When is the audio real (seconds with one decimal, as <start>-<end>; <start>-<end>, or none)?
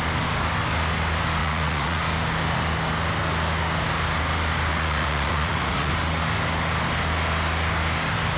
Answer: 0.0-1.4; 2.0-4.7; 5.9-8.4